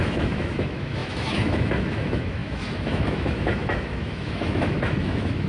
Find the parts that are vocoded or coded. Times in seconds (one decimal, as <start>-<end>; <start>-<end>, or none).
0.0-5.5